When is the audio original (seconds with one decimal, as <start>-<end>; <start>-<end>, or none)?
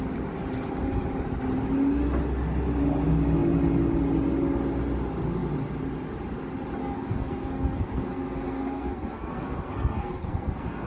0.0-6.8